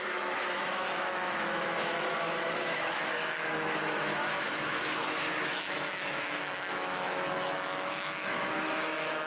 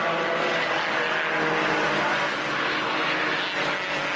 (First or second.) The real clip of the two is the second